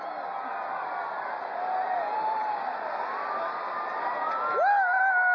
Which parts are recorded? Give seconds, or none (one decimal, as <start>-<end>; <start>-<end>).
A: 0.0-5.3